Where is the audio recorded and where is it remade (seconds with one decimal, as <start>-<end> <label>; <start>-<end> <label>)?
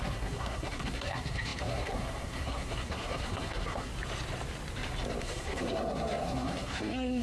0.0-3.9 remade; 3.9-5.2 recorded; 5.2-7.2 remade